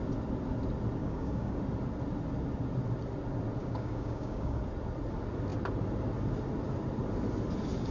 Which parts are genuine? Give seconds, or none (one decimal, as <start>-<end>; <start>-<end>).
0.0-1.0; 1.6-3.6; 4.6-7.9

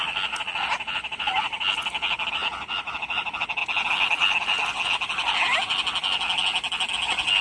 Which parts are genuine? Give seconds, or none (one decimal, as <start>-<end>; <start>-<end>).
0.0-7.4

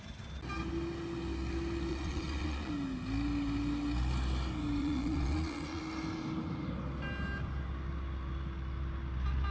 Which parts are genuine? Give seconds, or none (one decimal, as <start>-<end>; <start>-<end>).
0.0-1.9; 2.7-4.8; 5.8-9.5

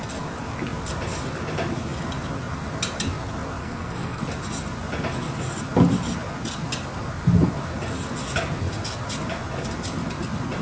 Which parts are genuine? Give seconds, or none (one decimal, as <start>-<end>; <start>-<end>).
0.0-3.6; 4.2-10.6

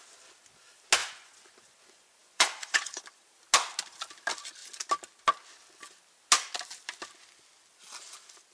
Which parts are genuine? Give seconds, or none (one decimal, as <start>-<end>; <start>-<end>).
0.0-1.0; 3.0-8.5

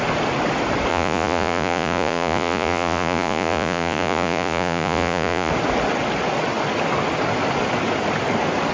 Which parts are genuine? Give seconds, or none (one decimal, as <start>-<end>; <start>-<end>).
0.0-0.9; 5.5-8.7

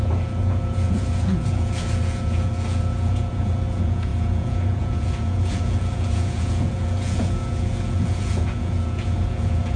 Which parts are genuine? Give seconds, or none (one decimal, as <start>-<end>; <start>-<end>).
none

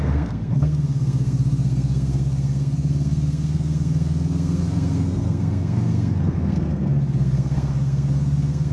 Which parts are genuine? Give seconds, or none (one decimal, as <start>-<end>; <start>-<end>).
none